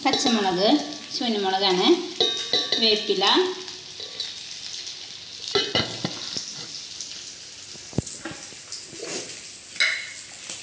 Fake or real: real